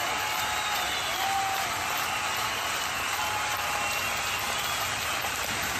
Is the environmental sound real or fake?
real